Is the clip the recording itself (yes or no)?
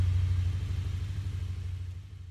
yes